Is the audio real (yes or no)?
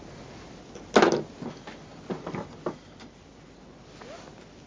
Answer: yes